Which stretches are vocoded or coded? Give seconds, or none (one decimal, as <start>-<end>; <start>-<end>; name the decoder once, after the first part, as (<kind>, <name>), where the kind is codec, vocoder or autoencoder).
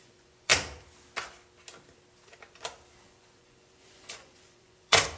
0.0-0.5 (vocoder, Vocos); 3.0-5.2